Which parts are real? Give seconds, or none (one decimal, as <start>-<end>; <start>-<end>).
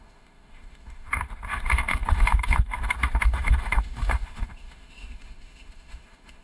none